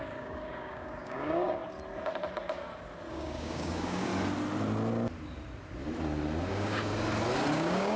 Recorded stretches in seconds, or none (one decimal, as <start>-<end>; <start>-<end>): 1.6-3.1; 4.1-6.5; 6.9-7.5

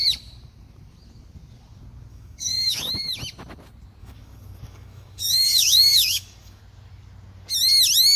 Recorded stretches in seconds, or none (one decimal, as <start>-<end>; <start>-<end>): 0.0-2.1; 2.9-4.0; 6.6-8.2

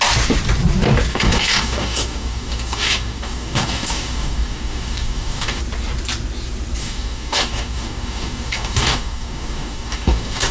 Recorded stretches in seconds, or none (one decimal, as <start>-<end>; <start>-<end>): 0.0-1.1; 5.6-6.8